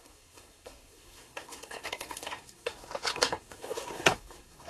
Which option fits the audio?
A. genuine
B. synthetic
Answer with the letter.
B